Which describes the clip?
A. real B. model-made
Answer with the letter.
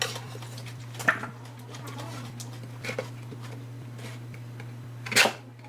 A